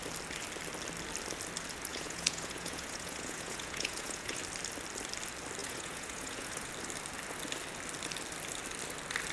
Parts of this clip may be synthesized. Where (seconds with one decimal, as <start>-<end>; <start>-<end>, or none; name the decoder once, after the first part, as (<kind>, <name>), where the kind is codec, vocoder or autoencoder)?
1.9-4.4 (vocoder, Vocos); 5.6-6.7